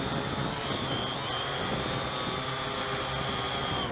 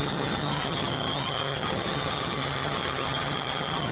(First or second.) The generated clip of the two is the second